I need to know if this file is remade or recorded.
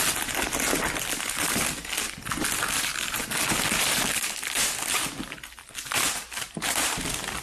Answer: recorded